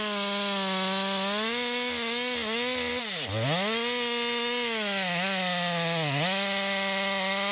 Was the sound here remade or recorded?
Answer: recorded